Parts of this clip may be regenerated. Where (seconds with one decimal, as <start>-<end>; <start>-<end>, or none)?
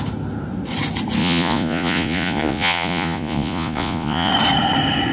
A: 1.2-4.3